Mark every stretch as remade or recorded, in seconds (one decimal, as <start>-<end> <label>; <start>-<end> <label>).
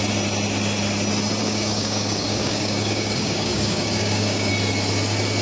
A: 0.0-1.4 recorded; 1.4-4.5 remade; 4.5-5.4 recorded